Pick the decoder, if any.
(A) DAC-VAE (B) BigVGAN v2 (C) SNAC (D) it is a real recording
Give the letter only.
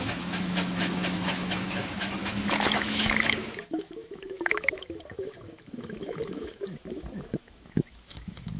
A